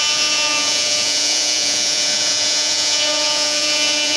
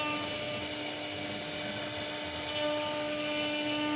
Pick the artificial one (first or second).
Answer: first